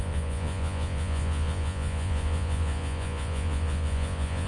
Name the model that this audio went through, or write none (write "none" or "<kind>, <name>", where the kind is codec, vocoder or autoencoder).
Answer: vocoder, Vocos